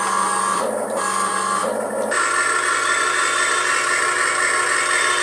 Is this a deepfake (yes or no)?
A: no